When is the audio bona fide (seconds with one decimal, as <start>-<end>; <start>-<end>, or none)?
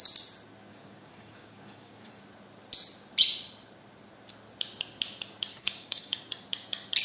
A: 0.0-0.7; 2.2-5.5; 6.2-7.0